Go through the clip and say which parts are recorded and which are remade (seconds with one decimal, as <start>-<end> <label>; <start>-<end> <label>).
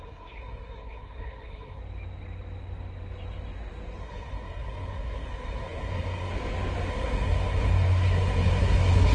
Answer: 0.0-1.8 remade; 1.8-4.0 recorded; 4.0-6.3 remade; 6.3-6.9 recorded; 6.9-9.1 remade